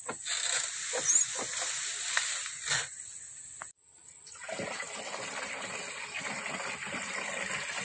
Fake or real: real